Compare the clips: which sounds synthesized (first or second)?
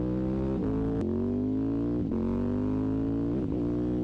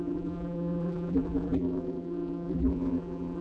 second